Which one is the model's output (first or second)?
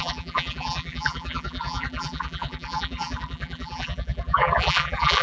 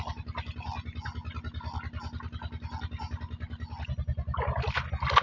first